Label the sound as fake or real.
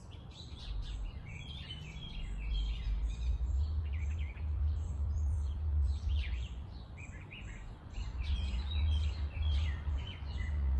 fake